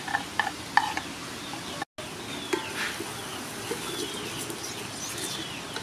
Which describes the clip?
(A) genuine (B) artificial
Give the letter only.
A